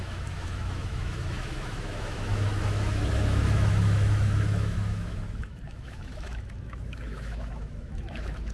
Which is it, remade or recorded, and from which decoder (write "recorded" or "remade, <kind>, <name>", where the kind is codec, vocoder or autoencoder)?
remade, autoencoder, DAC-VAE